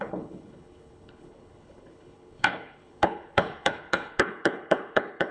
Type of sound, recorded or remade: remade